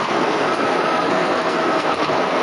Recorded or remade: remade